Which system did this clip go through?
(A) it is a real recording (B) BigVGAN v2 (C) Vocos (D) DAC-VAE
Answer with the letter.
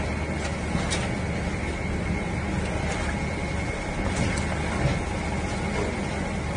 A